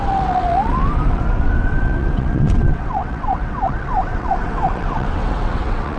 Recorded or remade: remade